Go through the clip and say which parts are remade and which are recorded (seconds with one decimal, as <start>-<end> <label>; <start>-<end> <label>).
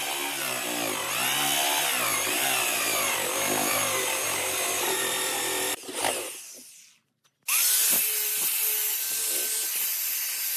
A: 0.0-2.1 recorded; 2.1-6.4 remade; 6.4-10.6 recorded